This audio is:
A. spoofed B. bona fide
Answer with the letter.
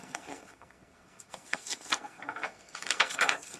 A